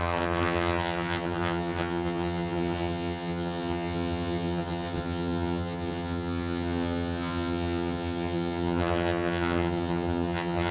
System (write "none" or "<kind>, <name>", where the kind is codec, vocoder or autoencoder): vocoder, HiFi-GAN